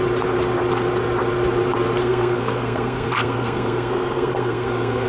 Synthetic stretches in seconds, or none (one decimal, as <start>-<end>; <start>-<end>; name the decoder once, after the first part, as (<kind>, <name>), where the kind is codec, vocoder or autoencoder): 2.0-5.1 (codec, SNAC)